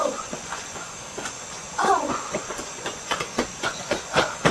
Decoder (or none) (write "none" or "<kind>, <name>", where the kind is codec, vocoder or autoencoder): vocoder, Vocos